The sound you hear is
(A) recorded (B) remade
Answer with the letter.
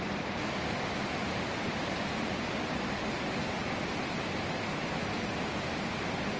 A